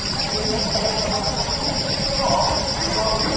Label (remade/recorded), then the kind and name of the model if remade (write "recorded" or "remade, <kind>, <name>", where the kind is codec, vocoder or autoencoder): remade, vocoder, BigVGAN v2